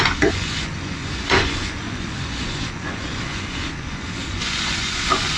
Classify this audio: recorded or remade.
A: remade